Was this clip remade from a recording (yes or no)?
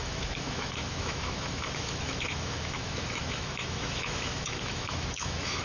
yes